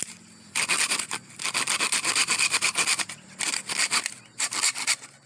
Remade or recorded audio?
recorded